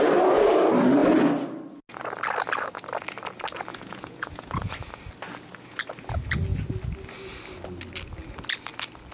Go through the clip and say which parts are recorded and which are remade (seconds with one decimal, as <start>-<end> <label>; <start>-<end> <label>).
0.0-3.7 recorded; 3.7-4.7 remade; 4.7-9.1 recorded